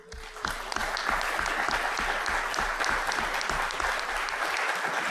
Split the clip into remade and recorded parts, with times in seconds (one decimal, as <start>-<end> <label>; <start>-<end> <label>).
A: 0.0-5.1 recorded